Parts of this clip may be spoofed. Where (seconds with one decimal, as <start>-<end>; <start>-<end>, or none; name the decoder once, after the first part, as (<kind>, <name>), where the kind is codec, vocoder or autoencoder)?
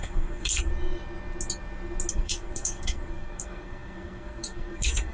0.0-0.7 (codec, SNAC); 2.1-5.1